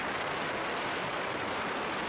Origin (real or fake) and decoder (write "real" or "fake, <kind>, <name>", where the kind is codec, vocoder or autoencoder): real